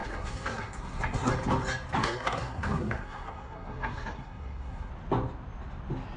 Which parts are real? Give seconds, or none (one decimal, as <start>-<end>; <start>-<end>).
1.3-2.0; 4.9-6.2